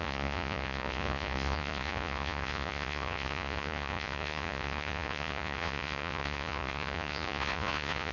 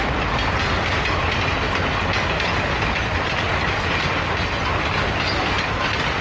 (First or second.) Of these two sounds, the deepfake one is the first